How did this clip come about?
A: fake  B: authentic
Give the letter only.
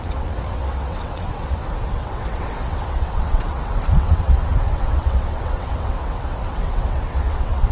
A